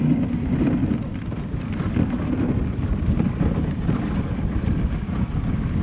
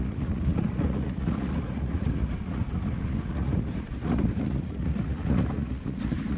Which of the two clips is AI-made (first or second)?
second